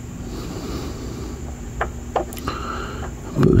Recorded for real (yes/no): yes